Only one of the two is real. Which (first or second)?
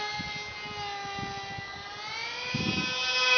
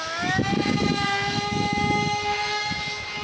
first